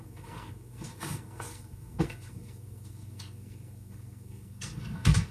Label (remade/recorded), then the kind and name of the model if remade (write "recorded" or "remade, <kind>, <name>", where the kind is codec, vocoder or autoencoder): remade, codec, SNAC